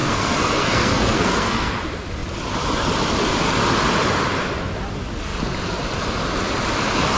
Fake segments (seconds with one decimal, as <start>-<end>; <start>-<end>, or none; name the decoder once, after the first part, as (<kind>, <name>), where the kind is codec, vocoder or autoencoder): 0.0-1.7 (codec, SNAC)